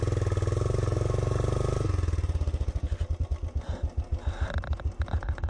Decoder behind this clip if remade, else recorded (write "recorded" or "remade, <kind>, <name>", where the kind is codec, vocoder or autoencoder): recorded